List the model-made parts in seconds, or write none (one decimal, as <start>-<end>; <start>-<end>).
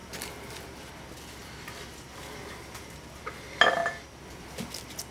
none